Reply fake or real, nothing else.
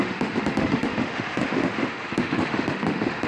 fake